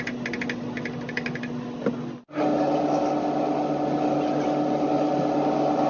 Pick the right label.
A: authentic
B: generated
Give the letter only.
A